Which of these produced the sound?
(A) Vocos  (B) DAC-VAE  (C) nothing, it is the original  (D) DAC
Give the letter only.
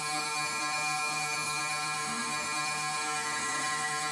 B